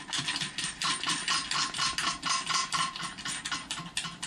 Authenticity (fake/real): real